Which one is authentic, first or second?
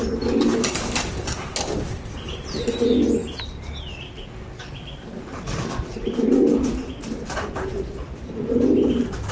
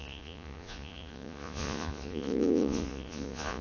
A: first